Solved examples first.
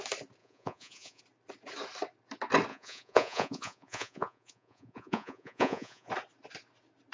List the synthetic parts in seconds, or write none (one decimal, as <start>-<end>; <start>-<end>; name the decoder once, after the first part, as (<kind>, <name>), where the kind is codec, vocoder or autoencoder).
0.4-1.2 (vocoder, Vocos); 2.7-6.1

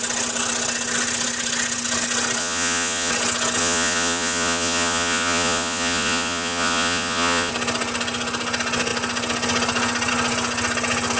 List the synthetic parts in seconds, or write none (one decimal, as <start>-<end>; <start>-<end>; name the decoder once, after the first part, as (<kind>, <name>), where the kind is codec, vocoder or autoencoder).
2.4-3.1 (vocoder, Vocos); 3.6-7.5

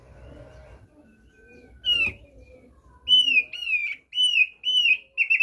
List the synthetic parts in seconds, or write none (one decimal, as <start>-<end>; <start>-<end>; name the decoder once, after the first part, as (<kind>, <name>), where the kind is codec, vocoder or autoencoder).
none

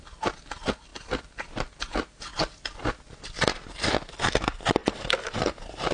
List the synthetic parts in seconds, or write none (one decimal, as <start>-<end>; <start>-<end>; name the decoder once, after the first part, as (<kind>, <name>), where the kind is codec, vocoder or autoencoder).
none

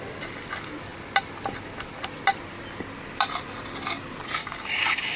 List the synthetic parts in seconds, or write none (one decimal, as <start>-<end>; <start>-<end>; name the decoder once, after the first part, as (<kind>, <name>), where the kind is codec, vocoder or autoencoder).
4.4-5.2 (codec, DAC)

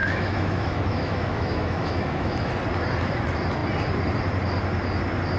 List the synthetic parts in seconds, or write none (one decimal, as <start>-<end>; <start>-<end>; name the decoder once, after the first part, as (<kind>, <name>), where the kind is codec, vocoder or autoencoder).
0.0-2.5 (autoencoder, DAC-VAE)